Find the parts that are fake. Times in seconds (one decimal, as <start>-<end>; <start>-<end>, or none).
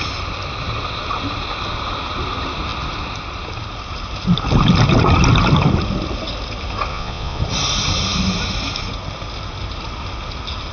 6.9-7.4